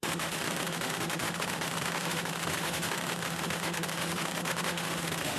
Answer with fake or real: fake